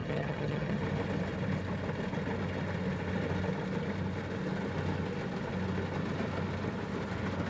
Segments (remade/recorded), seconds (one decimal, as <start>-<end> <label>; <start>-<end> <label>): 0.0-0.8 remade; 0.8-7.5 recorded